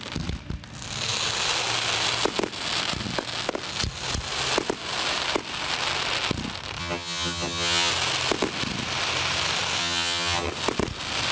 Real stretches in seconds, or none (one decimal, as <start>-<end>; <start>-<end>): 0.0-6.8; 7.9-9.8; 10.5-11.3